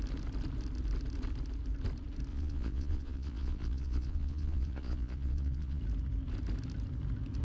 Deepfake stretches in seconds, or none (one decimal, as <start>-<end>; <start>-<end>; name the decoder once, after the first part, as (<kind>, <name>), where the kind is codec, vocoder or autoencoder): 2.3-5.8 (vocoder, Vocos)